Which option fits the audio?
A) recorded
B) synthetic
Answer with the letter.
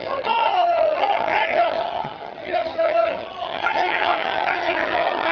B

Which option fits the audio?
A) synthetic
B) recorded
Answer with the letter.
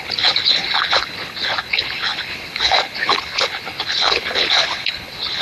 A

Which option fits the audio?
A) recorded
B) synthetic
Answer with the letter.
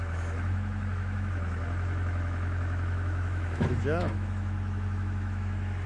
B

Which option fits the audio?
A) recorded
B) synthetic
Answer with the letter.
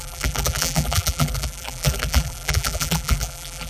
B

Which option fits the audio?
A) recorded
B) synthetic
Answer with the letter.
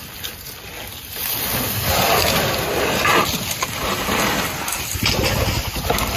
A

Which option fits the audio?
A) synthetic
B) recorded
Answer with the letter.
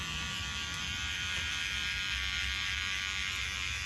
A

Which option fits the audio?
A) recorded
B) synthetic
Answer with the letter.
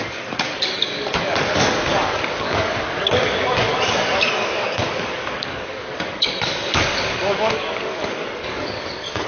B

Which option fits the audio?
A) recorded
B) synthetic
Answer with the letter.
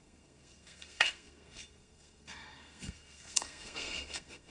B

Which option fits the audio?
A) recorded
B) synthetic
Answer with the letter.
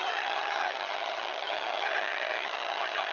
B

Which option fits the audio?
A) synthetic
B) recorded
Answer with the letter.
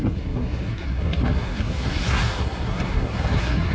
A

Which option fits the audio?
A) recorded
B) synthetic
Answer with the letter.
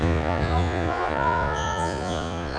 B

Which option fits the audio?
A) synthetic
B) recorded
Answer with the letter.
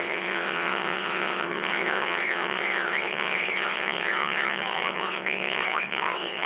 A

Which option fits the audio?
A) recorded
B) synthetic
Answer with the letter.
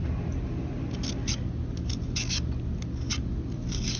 A